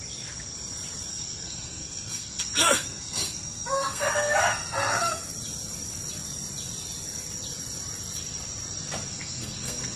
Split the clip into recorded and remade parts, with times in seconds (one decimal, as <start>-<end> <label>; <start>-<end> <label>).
0.0-1.1 recorded; 1.1-5.2 remade; 5.2-9.1 recorded; 9.1-10.0 remade